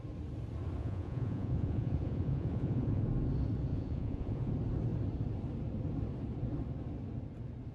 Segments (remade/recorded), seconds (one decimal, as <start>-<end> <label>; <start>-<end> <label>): 0.0-0.8 recorded; 0.8-3.0 remade; 3.0-3.7 recorded; 3.7-4.5 remade; 4.5-7.7 recorded